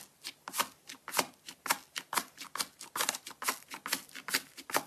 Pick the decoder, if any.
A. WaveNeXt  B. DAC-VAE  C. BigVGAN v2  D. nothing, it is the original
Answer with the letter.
D